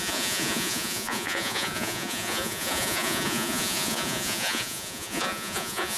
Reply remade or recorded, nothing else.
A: remade